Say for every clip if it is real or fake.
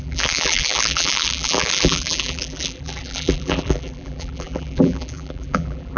fake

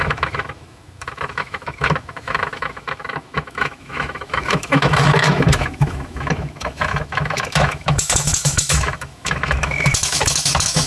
fake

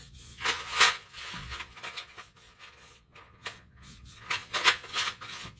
fake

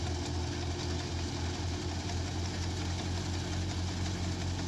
real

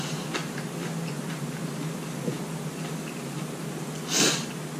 real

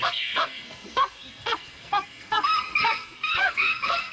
fake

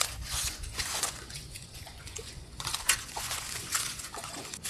fake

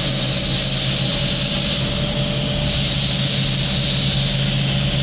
real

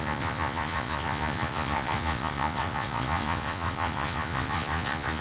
fake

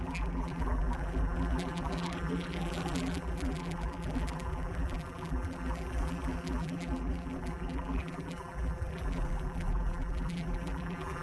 fake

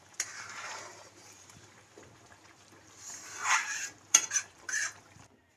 fake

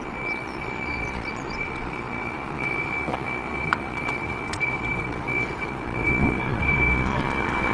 fake